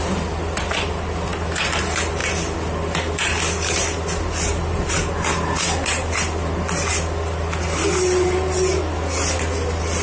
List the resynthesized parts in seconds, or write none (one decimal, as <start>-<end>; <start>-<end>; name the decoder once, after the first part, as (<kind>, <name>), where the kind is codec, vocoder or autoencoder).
none